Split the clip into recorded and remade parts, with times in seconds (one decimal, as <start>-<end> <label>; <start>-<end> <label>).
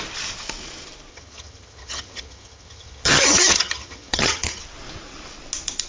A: 0.0-1.1 recorded; 1.1-4.6 remade; 4.6-5.9 recorded